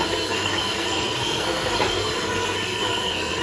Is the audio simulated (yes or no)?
yes